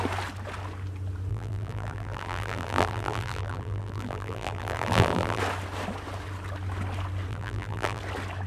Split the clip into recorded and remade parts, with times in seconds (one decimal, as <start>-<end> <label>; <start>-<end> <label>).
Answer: 0.0-1.3 recorded; 1.3-5.4 remade; 5.4-7.3 recorded; 7.3-8.0 remade; 8.0-8.5 recorded